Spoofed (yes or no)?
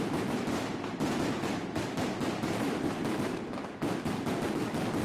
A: yes